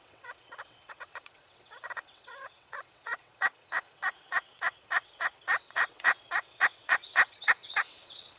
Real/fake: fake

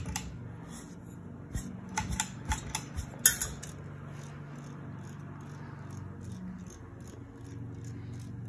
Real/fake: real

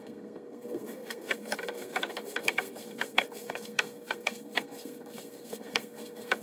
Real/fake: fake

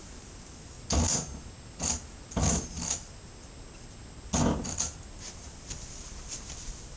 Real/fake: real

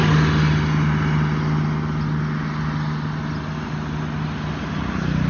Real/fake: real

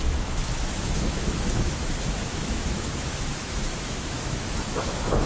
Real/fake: fake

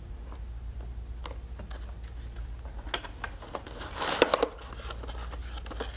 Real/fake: real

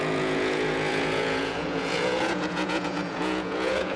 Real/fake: fake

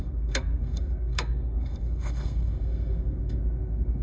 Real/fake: fake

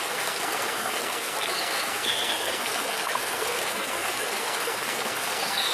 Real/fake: fake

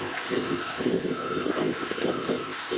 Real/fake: fake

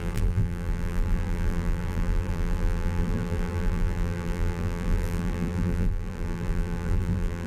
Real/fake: fake